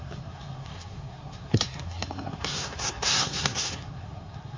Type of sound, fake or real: fake